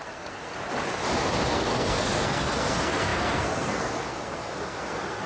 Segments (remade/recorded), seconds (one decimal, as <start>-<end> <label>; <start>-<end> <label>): 0.0-0.5 remade; 0.5-1.5 recorded; 1.5-5.3 remade

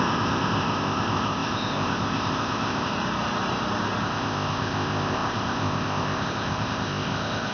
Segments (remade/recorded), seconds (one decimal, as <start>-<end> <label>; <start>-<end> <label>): 0.0-2.9 remade; 2.9-4.0 recorded; 4.0-7.5 remade

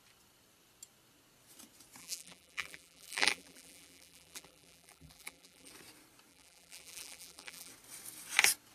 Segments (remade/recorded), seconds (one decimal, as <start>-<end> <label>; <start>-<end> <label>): 0.0-2.0 recorded; 2.0-5.7 remade; 5.7-6.3 recorded; 6.3-7.7 remade; 7.7-8.7 recorded

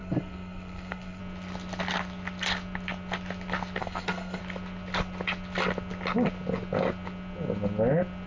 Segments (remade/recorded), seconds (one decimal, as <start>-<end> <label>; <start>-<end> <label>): 0.0-1.2 remade; 1.2-3.8 recorded; 3.8-4.4 remade; 4.4-8.3 recorded

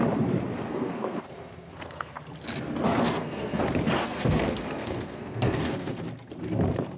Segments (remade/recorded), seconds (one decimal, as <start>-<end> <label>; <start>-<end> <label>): 0.0-0.7 recorded; 0.7-2.2 remade; 2.2-3.0 recorded; 3.0-3.6 remade; 3.6-4.0 recorded; 4.0-6.0 remade; 6.0-7.0 recorded

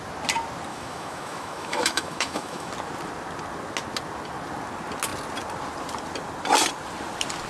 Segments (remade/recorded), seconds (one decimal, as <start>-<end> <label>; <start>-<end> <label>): 0.0-0.7 recorded; 0.7-2.7 remade; 2.7-7.5 recorded

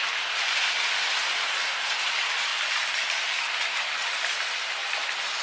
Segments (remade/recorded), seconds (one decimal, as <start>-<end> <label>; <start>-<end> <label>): 0.0-5.4 remade

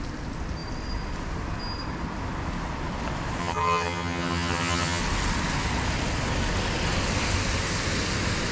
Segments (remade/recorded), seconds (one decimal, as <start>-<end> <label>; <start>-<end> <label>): 0.0-3.4 recorded; 3.4-5.0 remade; 5.0-8.5 recorded